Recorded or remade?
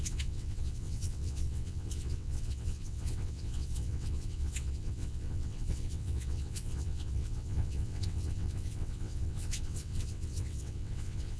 remade